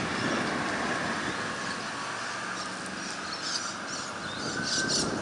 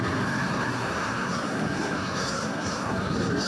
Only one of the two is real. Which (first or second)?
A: first